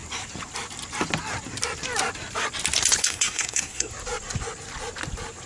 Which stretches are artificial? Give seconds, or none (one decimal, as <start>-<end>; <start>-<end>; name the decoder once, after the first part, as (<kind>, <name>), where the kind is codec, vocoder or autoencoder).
3.0-3.9 (codec, SNAC)